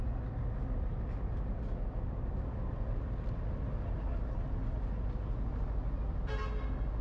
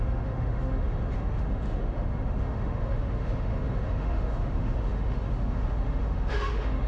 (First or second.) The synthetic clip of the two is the second